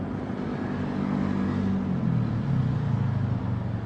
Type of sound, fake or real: real